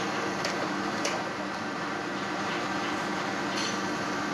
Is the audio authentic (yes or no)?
no